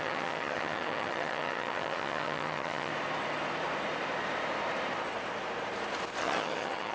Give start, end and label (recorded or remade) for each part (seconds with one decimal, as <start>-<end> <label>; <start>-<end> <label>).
0.0-2.9 remade; 2.9-6.2 recorded; 6.2-6.9 remade